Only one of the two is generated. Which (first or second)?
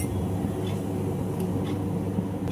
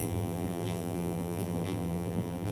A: second